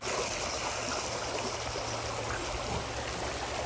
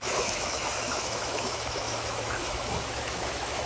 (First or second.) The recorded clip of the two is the first